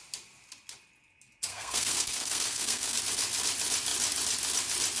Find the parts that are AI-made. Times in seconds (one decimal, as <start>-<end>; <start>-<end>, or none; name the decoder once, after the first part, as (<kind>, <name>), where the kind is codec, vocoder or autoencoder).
1.5-3.0 (codec, SNAC)